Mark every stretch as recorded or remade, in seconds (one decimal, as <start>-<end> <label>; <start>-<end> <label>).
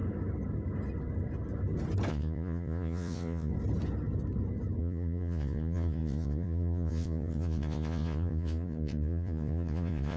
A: 0.0-2.1 recorded; 2.1-3.5 remade; 3.5-4.8 recorded; 4.8-10.2 remade